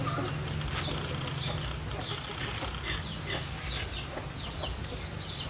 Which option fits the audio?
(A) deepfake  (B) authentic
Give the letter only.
B